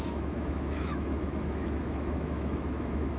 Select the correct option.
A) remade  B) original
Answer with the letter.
A